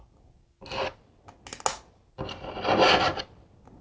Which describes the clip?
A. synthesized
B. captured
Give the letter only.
B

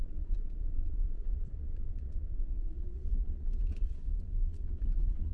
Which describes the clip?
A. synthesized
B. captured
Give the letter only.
A